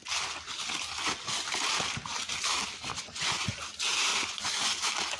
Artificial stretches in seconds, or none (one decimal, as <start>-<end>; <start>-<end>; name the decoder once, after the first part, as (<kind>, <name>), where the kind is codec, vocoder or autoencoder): 2.9-3.6 (vocoder, Vocos); 4.1-4.8